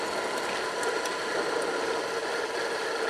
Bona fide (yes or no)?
yes